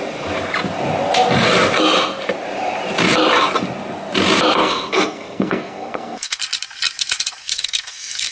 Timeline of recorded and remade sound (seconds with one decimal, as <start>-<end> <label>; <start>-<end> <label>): 0.0-4.6 recorded; 4.6-6.4 remade; 6.4-7.4 recorded; 7.4-8.3 remade